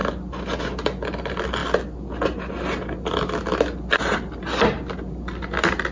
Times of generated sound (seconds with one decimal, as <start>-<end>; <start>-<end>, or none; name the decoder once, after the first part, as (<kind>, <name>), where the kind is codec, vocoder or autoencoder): none